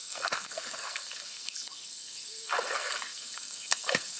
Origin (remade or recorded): remade